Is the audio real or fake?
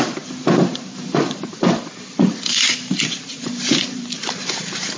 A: fake